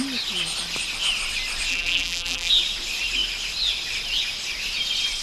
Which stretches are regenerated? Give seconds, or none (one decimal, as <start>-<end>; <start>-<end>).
1.7-2.5